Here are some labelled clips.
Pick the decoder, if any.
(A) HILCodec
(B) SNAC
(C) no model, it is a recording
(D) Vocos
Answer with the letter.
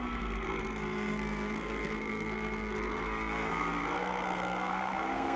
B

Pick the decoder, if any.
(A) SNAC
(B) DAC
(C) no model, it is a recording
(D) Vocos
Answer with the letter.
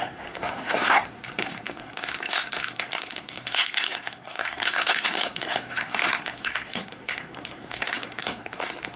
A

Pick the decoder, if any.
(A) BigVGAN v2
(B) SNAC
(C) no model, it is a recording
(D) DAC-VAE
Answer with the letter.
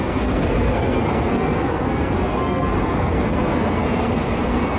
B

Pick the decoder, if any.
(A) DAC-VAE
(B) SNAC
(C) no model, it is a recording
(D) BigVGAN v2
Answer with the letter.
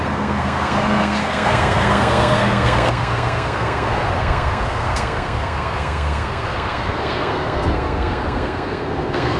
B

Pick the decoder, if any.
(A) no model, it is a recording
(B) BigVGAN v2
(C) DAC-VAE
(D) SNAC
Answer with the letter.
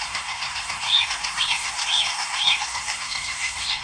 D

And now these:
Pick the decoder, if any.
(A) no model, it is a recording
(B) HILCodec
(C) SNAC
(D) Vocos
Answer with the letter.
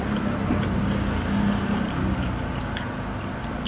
A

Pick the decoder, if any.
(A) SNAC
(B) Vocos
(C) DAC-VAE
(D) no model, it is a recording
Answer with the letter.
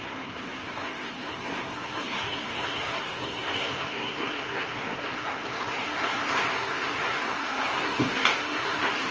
A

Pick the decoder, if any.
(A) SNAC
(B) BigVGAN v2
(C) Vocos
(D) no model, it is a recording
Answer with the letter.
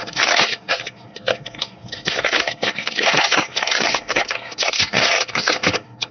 A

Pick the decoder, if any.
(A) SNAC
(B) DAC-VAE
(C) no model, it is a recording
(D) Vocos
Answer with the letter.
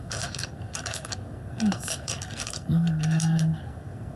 A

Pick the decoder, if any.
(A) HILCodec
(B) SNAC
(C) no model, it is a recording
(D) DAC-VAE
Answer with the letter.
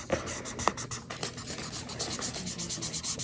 C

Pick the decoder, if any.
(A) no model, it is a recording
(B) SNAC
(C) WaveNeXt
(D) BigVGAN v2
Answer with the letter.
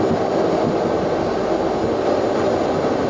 A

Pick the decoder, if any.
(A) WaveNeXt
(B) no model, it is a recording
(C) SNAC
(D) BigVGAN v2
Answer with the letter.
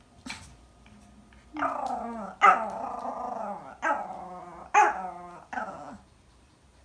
B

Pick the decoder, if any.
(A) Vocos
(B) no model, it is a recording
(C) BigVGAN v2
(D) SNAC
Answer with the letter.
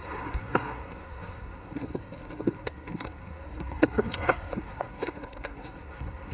D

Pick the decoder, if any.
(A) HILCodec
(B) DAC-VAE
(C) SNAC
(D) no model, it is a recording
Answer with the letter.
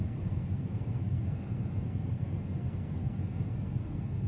C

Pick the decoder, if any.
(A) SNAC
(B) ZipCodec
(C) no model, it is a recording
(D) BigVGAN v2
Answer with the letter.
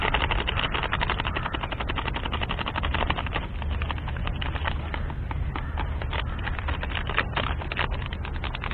C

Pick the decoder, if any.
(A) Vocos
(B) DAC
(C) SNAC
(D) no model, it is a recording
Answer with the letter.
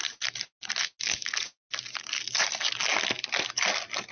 D